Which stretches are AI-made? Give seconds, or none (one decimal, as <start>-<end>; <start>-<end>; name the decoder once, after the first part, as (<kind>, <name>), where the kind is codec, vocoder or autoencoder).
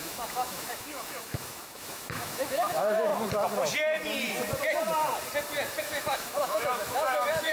0.0-3.1 (autoencoder, DAC-VAE); 5.8-7.5